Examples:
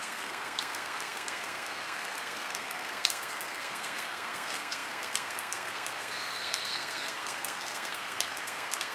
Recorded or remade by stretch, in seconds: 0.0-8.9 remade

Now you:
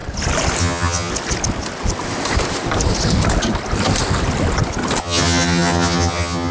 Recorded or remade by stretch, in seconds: 0.0-0.6 recorded; 0.6-1.1 remade; 1.1-5.0 recorded; 5.0-6.5 remade

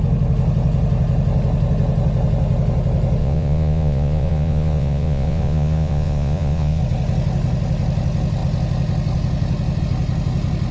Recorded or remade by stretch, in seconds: 0.0-3.2 recorded; 3.2-6.8 remade; 6.8-10.7 recorded